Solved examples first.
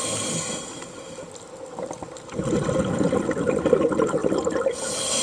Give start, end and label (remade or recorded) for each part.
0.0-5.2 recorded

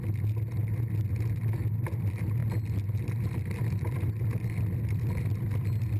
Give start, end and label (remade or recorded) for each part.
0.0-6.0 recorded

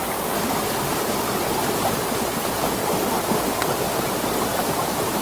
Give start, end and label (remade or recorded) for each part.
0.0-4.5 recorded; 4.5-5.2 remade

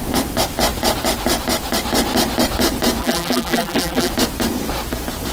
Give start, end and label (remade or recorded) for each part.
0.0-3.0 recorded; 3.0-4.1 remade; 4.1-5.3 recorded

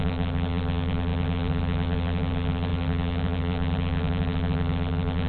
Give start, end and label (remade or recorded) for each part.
0.0-5.3 remade